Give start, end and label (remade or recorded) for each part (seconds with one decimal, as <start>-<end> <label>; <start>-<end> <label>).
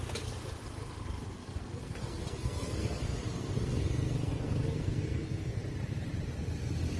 0.0-1.4 recorded; 1.4-5.6 remade; 5.6-7.0 recorded